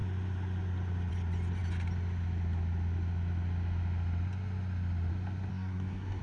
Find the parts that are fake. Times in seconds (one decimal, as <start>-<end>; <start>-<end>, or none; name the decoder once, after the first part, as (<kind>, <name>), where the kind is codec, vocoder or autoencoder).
5.5-6.2 (codec, SNAC)